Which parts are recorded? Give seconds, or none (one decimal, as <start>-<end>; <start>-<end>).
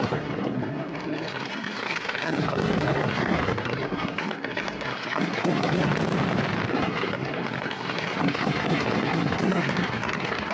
5.9-6.7